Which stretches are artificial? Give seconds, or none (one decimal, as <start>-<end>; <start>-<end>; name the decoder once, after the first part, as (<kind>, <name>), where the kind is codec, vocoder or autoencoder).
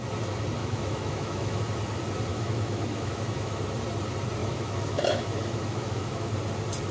0.6-1.6 (autoencoder, DAC-VAE); 2.3-3.6; 4.4-6.3